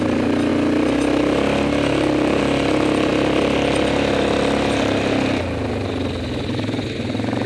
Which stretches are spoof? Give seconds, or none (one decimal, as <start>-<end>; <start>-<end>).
none